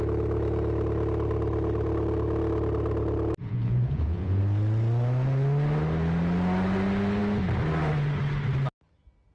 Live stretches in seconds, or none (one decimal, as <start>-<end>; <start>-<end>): 0.0-3.4; 4.4-9.3